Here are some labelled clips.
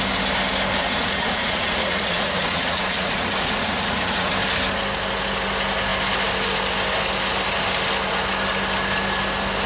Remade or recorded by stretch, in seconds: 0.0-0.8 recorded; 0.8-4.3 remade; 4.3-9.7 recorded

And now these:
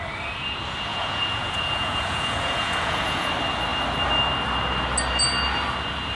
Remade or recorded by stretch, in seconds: 0.0-0.9 recorded; 0.9-3.3 remade; 3.3-6.1 recorded